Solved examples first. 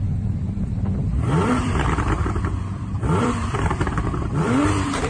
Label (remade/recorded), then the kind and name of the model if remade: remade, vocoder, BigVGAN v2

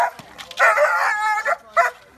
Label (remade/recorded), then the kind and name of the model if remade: recorded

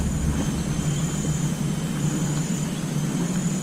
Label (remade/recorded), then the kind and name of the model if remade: recorded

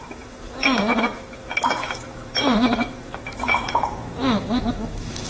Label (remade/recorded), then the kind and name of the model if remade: remade, autoencoder, DAC-VAE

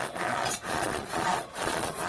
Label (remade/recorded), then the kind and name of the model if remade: remade, vocoder, Vocos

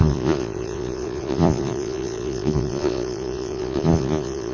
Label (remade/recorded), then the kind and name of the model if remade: remade, vocoder, Vocos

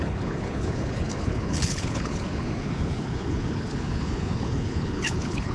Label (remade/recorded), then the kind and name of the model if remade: remade, codec, HILCodec